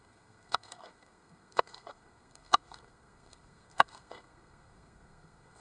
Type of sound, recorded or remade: remade